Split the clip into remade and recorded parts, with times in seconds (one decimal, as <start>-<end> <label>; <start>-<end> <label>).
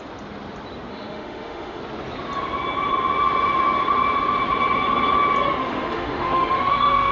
0.0-0.9 recorded; 0.9-1.8 remade; 1.8-5.6 recorded; 5.6-7.1 remade